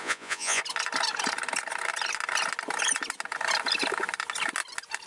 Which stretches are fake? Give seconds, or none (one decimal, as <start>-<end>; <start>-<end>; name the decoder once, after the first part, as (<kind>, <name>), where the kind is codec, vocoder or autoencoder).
0.0-0.6 (vocoder, Vocos)